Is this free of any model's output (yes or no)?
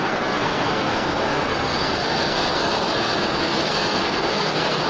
no